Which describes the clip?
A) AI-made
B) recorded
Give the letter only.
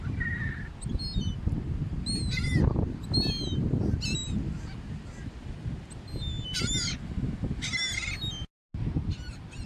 B